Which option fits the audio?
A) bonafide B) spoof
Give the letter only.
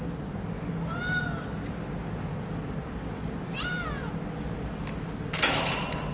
A